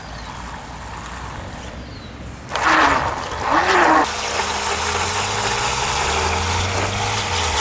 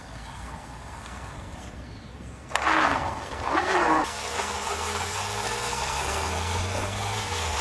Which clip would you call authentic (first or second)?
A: first